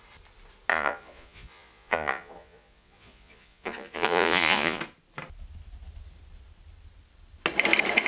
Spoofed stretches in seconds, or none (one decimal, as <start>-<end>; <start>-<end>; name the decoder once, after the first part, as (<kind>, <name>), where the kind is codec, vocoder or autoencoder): 0.7-4.8 (vocoder, Vocos)